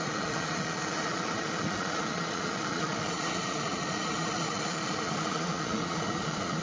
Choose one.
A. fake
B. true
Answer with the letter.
A